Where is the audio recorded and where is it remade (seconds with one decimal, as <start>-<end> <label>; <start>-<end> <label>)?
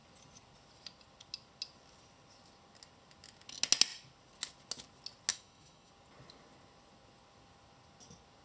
0.0-5.3 recorded; 5.3-5.9 remade; 5.9-8.4 recorded